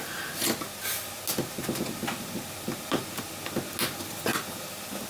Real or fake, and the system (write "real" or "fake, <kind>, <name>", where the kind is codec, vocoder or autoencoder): real